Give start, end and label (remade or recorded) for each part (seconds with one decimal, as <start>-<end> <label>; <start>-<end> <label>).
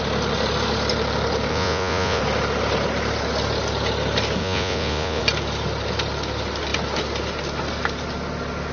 0.0-1.5 recorded; 1.5-2.2 remade; 2.2-4.4 recorded; 4.4-5.2 remade; 5.2-8.7 recorded